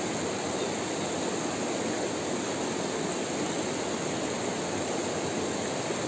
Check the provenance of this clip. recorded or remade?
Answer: recorded